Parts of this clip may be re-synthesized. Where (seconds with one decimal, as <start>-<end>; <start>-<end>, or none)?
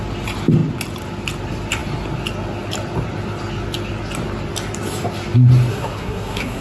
5.7-6.6